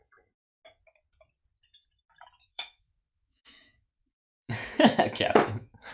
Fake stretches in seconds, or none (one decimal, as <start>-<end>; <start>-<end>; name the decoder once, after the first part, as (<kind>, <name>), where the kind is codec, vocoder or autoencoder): 2.4-5.9 (autoencoder, DAC-VAE)